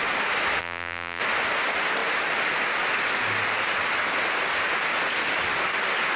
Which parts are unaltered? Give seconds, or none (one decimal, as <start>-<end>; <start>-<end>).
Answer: 0.0-0.6; 1.2-6.2